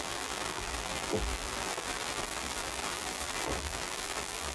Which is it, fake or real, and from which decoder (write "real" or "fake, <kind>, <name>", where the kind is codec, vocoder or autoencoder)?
fake, vocoder, BigVGAN v2